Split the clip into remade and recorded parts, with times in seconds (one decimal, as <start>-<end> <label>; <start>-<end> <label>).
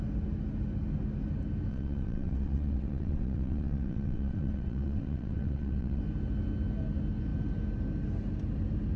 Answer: 0.0-1.7 recorded; 1.7-6.0 remade; 6.0-9.0 recorded